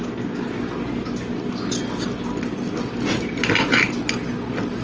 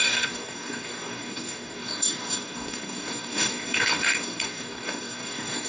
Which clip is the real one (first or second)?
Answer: first